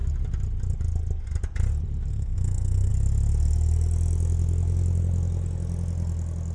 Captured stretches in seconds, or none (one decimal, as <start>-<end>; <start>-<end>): 0.0-2.1; 2.9-6.5